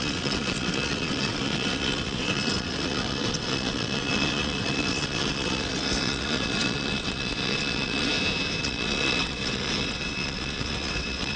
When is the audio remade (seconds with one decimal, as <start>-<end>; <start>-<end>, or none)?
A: 0.0-8.1; 8.6-11.4